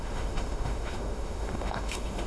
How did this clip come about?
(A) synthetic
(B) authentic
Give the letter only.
A